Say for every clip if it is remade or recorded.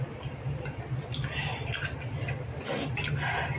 recorded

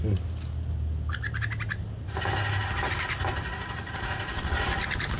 recorded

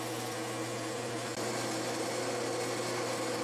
recorded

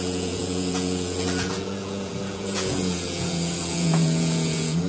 remade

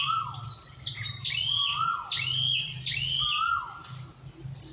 recorded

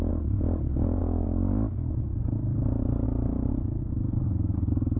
recorded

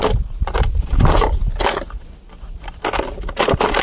recorded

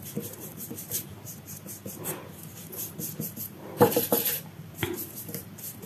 remade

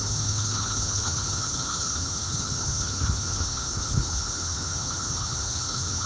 remade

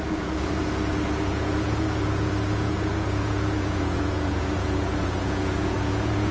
remade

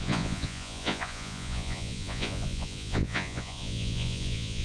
remade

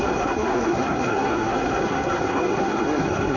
remade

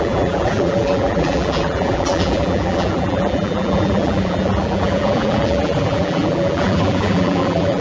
remade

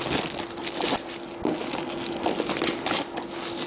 recorded